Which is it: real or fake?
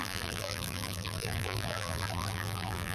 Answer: fake